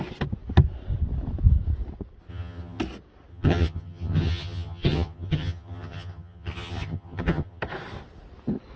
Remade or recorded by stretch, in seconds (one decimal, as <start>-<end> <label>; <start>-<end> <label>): 0.0-2.3 recorded; 2.3-2.8 remade; 2.8-3.3 recorded; 3.3-7.6 remade; 7.6-8.8 recorded